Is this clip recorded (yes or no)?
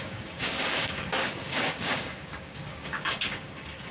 no